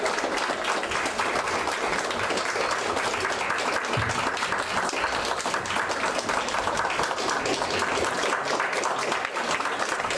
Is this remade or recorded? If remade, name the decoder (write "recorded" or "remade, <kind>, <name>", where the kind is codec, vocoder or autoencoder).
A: recorded